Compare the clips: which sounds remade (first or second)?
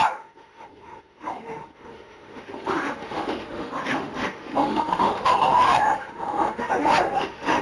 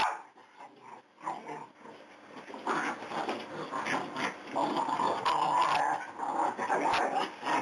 first